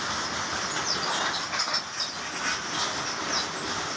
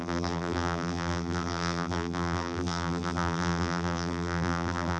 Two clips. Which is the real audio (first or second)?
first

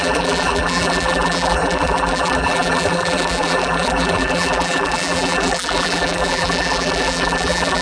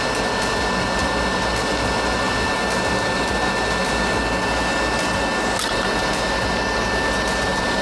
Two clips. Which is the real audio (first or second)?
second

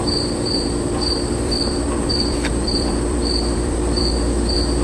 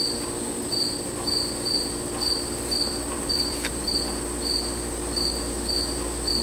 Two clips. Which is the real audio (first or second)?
second